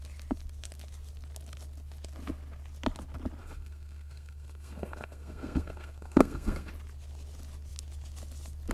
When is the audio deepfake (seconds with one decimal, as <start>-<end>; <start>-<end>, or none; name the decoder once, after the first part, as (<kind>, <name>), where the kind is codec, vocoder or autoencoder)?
3.4-6.7 (codec, SNAC)